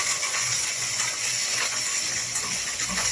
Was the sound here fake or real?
fake